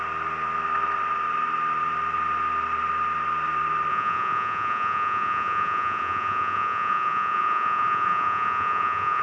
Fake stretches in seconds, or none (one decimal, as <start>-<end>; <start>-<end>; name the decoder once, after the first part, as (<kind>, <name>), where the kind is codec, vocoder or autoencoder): 3.9-9.2 (vocoder, Vocos)